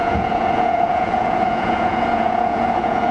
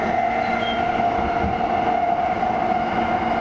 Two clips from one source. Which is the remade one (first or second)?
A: first